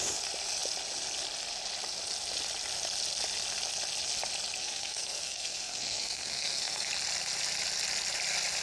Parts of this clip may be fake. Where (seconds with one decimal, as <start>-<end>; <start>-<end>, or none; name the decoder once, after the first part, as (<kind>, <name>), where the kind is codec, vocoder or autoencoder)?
4.6-6.9 (codec, SNAC)